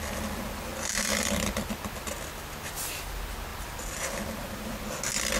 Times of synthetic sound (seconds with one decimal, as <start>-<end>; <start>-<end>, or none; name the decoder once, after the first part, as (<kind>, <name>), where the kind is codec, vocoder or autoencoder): 0.7-1.7 (vocoder, BigVGAN v2); 3.5-4.9